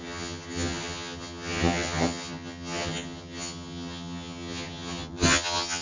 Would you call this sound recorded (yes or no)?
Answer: no